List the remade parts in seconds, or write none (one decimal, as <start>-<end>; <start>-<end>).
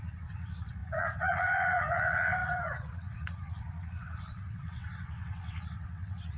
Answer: 0.0-6.4